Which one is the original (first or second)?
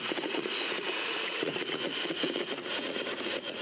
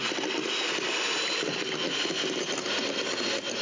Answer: second